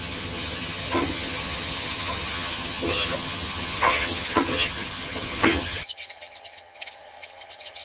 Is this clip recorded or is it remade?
remade